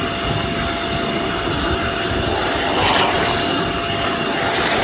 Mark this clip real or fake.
real